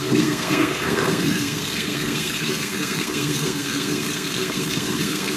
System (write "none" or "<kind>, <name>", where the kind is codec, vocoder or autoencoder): codec, SNAC